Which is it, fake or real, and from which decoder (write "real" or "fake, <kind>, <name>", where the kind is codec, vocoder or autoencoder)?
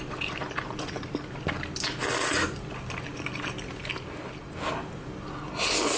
real